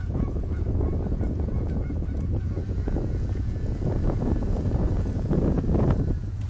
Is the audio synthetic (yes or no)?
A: yes